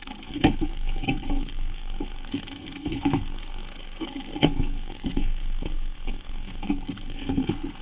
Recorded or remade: remade